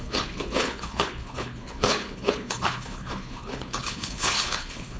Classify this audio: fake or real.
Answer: fake